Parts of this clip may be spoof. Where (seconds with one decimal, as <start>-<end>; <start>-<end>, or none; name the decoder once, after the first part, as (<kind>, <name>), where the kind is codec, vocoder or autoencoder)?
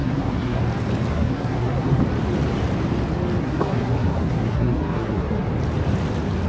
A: 0.0-0.6 (codec, SNAC); 1.1-2.0; 3.4-5.5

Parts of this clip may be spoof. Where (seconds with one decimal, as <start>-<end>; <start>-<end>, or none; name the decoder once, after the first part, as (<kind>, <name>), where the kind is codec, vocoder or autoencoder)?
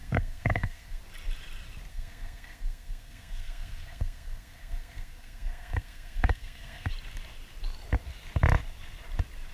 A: 0.0-1.0 (codec, SNAC); 1.9-6.9